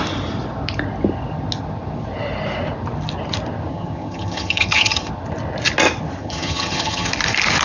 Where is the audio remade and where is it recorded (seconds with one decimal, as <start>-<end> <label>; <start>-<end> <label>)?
0.0-3.7 recorded; 3.7-5.1 remade; 5.1-6.2 recorded; 6.2-7.1 remade; 7.1-7.6 recorded